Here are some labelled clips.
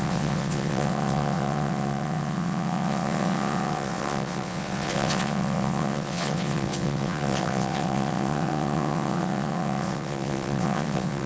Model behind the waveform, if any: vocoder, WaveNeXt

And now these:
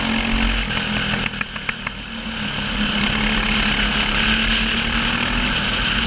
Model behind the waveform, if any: none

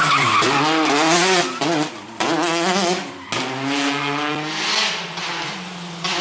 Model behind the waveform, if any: none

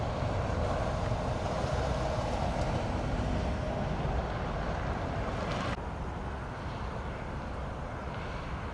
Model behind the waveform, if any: none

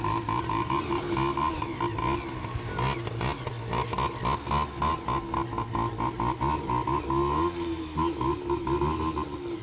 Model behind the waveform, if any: none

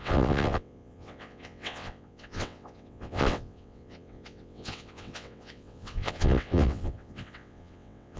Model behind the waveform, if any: vocoder, WaveNeXt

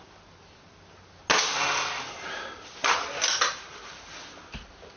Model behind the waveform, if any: none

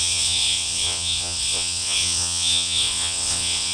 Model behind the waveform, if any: vocoder, WaveNeXt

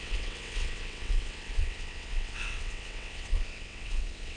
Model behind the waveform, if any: vocoder, WaveNeXt